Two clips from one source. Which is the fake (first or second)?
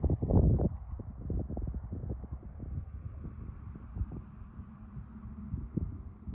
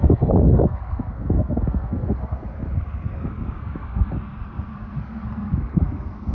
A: second